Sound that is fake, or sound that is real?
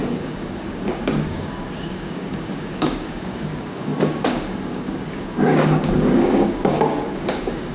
fake